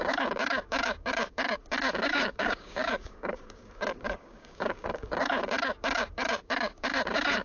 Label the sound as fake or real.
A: fake